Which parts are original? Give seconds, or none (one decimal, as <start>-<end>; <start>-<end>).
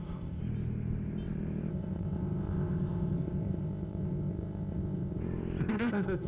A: 0.4-1.7; 5.2-5.7